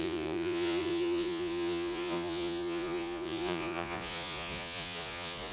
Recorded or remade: remade